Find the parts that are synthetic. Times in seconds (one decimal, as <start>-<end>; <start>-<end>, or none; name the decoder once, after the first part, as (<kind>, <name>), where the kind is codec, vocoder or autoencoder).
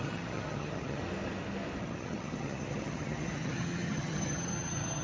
0.0-1.0 (vocoder, HiFi-GAN); 1.8-5.0